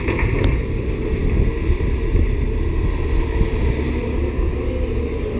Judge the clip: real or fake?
real